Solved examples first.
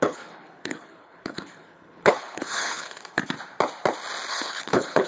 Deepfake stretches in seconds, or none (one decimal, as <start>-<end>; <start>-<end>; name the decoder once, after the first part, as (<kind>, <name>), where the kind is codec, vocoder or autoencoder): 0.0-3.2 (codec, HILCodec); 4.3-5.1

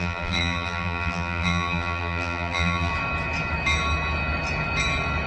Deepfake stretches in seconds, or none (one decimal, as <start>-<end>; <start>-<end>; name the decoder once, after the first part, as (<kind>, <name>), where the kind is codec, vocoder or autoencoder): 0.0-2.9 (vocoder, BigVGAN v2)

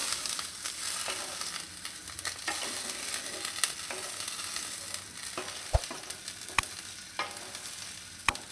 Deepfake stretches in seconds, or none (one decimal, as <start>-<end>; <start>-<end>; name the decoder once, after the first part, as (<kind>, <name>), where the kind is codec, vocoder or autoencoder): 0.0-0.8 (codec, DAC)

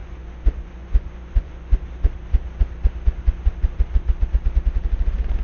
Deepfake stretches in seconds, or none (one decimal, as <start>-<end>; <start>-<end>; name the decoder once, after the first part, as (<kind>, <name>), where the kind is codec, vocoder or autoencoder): 0.0-1.8 (vocoder, Vocos)